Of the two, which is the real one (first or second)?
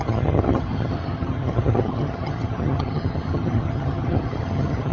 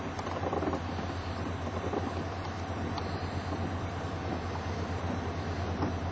second